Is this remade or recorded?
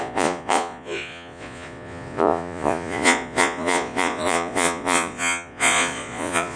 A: remade